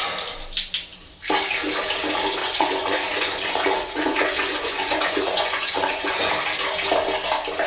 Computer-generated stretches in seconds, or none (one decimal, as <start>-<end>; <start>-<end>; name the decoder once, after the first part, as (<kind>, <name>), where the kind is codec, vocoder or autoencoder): 2.4-6.3 (vocoder, Vocos)